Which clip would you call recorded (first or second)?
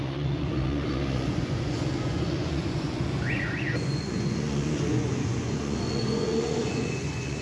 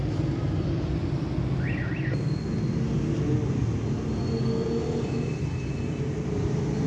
second